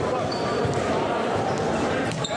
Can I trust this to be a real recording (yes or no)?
no